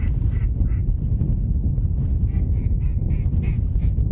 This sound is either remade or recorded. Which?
recorded